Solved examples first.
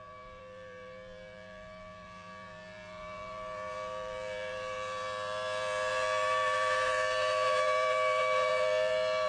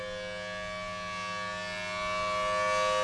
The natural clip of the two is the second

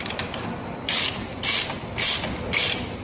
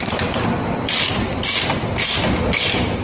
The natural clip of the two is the second